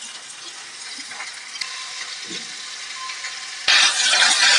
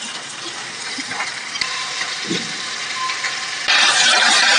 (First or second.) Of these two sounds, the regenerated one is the second